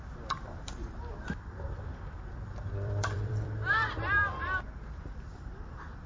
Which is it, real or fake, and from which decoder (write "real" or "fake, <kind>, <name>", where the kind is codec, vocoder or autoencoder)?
fake, vocoder, BigVGAN v2